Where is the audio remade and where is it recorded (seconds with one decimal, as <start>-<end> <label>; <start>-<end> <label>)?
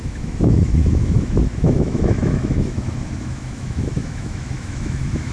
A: 0.0-5.3 remade